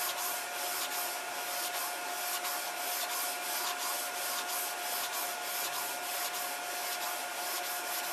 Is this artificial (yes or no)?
no